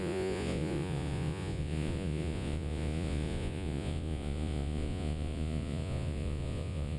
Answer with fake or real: fake